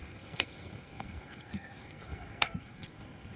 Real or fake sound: fake